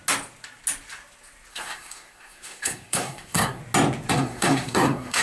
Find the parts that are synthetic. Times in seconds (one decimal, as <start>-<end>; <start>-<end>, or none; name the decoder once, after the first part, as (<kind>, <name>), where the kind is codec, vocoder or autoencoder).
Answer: 1.5-3.6 (codec, SNAC); 4.1-5.2